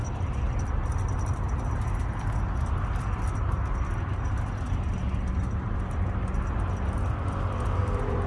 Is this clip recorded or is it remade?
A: recorded